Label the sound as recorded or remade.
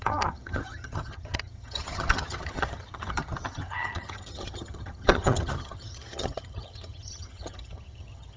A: remade